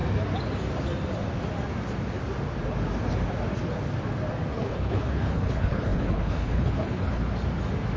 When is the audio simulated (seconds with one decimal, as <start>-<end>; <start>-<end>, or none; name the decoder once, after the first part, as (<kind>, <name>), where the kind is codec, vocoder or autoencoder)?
4.5-7.2 (codec, HILCodec)